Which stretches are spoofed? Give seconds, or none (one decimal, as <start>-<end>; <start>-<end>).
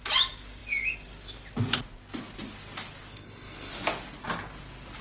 3.1-3.7